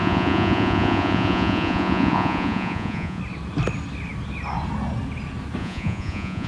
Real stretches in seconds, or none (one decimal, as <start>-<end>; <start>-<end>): 3.2-5.6